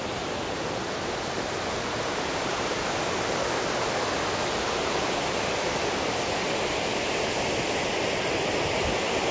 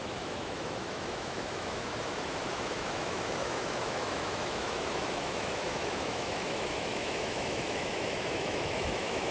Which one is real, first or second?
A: first